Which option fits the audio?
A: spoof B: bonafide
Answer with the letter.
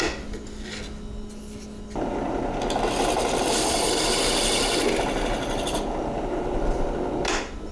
B